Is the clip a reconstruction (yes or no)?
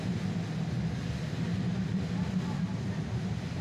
no